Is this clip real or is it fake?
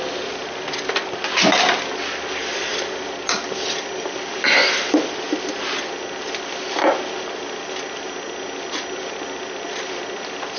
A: real